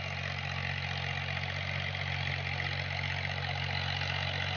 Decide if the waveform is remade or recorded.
recorded